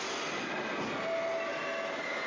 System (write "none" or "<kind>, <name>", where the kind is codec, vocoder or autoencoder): none